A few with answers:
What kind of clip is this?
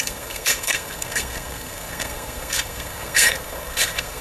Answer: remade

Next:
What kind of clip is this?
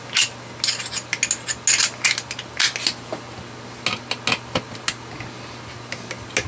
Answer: recorded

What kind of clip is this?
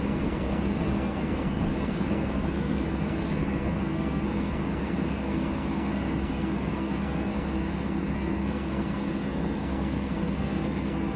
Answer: remade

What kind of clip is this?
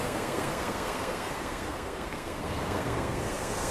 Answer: remade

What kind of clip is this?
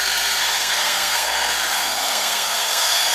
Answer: remade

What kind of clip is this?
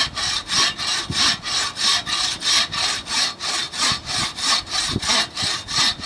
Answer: recorded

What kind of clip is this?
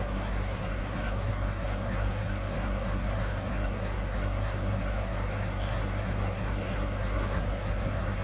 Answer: remade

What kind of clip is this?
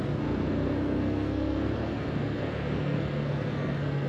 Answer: remade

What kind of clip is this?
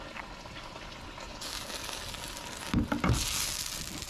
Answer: recorded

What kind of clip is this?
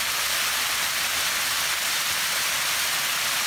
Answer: recorded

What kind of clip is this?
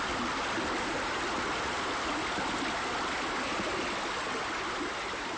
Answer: recorded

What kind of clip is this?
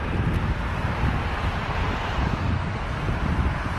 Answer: recorded